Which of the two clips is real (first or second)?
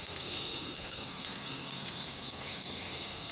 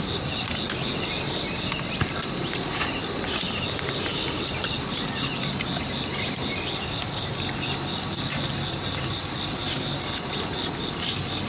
second